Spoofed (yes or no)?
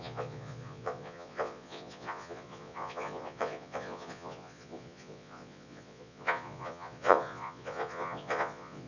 yes